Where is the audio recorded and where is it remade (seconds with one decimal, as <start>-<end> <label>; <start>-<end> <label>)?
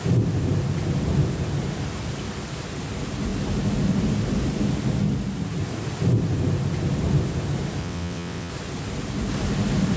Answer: 0.0-7.8 recorded; 7.8-8.5 remade; 8.5-10.0 recorded